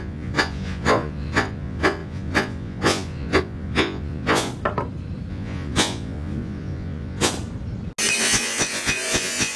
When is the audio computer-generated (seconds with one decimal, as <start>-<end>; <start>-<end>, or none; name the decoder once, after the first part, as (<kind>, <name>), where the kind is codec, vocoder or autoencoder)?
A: 0.0-4.5 (vocoder, Vocos); 5.3-7.3; 8.2-9.6